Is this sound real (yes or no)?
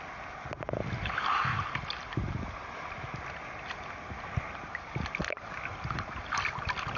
yes